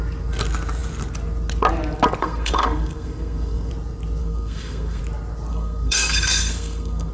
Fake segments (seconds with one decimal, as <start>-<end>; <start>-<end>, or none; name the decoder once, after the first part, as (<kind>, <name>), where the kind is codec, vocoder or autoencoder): 2.2-3.7 (codec, SNAC); 4.2-5.0; 5.5-7.1